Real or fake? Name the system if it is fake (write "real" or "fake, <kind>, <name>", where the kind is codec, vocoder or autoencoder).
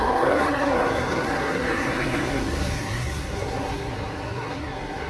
fake, codec, SNAC